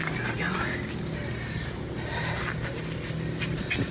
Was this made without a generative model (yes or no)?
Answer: yes